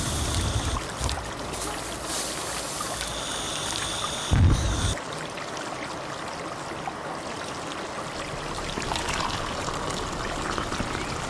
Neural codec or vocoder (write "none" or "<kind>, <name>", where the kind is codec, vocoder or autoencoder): none